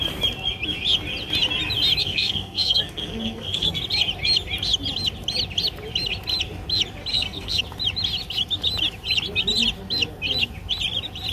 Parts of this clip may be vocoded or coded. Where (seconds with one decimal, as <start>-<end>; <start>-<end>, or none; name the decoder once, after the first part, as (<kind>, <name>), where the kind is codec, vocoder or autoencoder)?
2.0-3.8 (codec, SNAC); 7.1-7.6

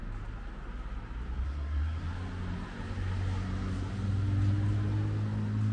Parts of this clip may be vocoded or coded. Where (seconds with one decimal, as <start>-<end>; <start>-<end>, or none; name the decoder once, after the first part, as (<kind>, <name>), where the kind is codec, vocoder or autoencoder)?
1.4-2.1 (codec, SNAC)

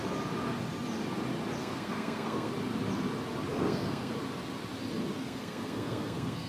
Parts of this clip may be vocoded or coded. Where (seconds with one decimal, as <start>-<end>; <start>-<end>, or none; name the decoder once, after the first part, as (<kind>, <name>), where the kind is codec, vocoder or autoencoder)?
1.6-2.5 (codec, SNAC); 3.5-4.1; 5.2-6.5

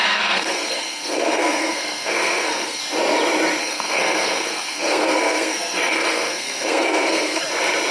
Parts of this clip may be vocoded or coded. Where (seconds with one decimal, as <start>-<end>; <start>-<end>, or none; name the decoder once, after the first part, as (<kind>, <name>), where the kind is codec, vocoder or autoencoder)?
0.0-2.8 (codec, SNAC); 3.6-7.4

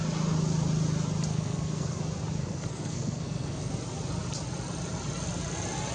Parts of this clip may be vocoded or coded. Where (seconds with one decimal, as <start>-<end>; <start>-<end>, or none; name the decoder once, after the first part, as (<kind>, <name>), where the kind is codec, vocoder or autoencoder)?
1.3-2.0 (codec, SNAC); 2.4-3.7